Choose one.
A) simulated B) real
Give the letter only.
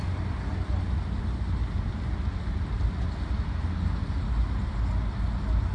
B